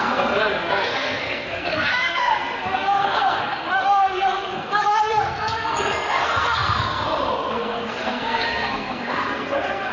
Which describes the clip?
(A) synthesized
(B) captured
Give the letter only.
A